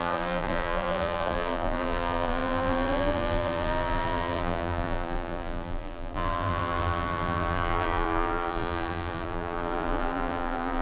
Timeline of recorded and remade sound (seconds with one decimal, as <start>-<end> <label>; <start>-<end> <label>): 0.0-10.8 remade